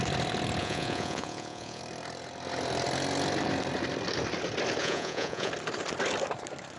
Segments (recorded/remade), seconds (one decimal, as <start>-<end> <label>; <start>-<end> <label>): 0.0-0.6 recorded; 0.6-1.8 remade; 1.8-4.8 recorded; 4.8-5.5 remade; 5.5-6.8 recorded